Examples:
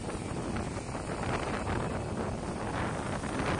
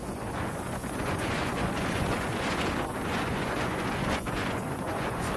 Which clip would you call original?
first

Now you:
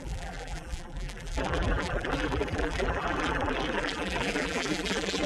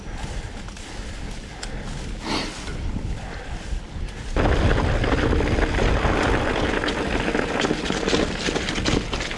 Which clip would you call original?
second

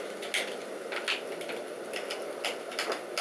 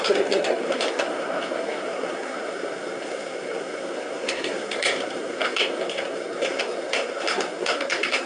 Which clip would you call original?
first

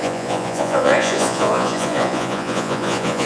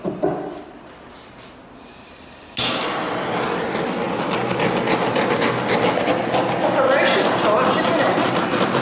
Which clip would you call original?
second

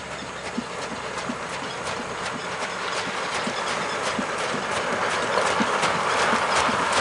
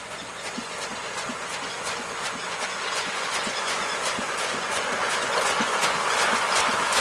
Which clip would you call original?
first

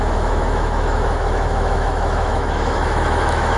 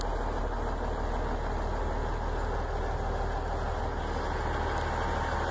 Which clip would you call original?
second